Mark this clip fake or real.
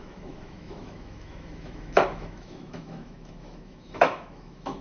fake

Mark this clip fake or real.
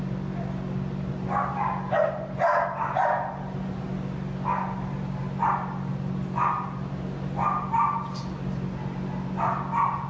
real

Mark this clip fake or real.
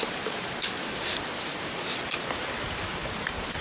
real